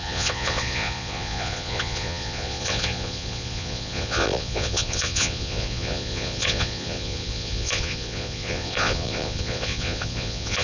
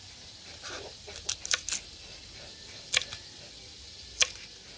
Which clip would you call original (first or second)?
second